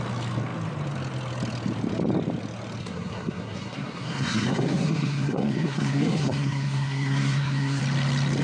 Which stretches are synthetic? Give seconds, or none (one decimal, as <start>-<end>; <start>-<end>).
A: 2.8-7.8